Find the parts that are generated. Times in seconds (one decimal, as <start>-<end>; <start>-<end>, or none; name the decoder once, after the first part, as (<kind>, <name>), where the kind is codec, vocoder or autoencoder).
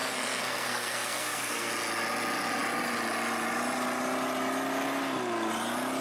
0.0-1.7 (codec, SNAC)